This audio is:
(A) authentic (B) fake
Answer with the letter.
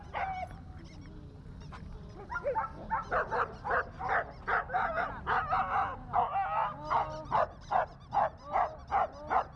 A